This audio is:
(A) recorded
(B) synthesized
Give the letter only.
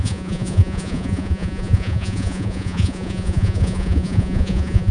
B